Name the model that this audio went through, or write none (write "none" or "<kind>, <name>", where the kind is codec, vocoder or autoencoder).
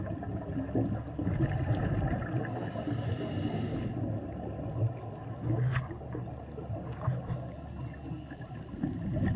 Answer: none